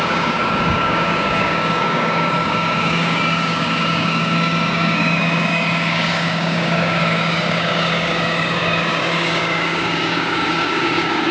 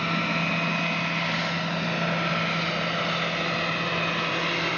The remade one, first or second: first